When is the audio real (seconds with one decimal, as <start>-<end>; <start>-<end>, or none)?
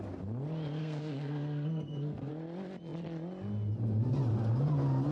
0.0-0.8; 2.3-5.1